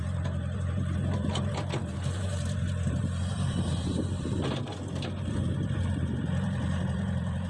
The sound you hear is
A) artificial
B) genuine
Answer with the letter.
A